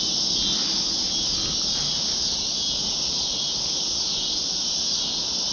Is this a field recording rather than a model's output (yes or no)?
yes